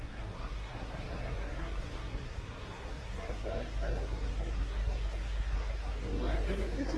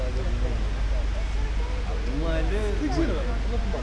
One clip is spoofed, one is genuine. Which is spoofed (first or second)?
first